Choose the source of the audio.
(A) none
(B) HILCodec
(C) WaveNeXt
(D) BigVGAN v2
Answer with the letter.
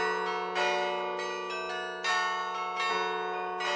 A